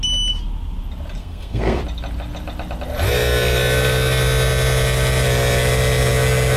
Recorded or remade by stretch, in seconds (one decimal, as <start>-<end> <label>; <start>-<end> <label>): 0.0-1.2 recorded; 1.2-1.8 remade; 1.8-6.6 recorded